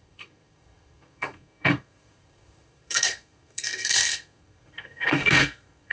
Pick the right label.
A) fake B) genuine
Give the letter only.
A